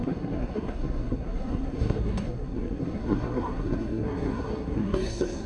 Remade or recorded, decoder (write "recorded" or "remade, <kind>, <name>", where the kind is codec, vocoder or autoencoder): remade, codec, SNAC